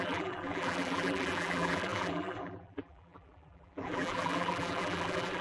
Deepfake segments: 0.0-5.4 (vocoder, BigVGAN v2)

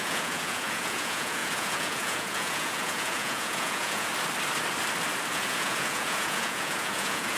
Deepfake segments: 0.0-4.1 (vocoder, Vocos); 5.3-7.4

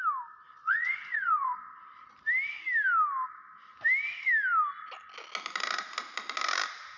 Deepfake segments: 0.5-2.1 (vocoder, Vocos)

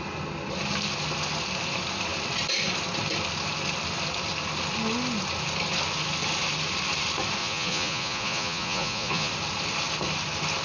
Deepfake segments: 7.4-9.3 (vocoder, Vocos)

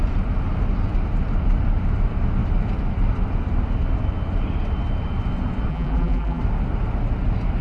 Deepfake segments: 5.7-6.4 (vocoder, BigVGAN v2)